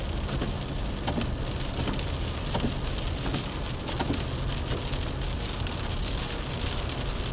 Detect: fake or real real